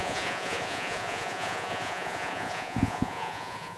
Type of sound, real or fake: fake